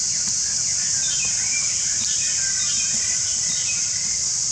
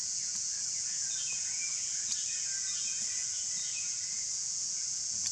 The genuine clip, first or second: first